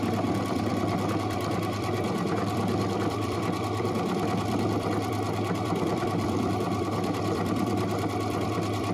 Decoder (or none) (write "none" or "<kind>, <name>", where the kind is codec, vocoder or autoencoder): vocoder, BigVGAN v2